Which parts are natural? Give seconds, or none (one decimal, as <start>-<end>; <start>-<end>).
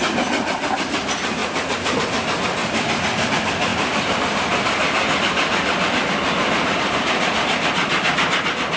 0.0-1.4; 2.0-2.6; 3.3-3.7